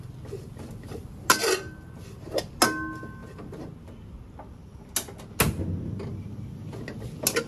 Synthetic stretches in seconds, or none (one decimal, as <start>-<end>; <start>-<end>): none